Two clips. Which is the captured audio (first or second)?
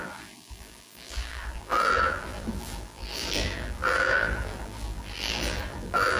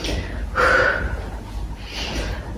second